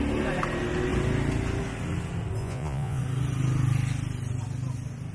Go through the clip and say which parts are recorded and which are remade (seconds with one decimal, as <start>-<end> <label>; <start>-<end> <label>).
0.0-2.4 recorded; 2.4-3.0 remade; 3.0-5.1 recorded